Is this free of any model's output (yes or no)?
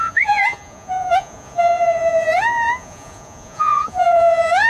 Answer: no